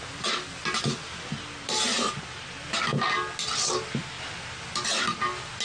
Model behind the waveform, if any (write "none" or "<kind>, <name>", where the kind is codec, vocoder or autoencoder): none